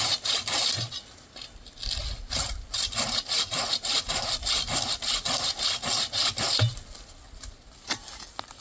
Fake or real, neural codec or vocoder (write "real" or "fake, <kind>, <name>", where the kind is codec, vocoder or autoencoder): real